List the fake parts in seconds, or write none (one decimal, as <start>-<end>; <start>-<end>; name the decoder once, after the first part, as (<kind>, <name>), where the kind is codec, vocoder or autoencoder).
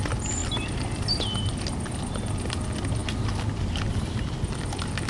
0.4-1.2 (vocoder, BigVGAN v2)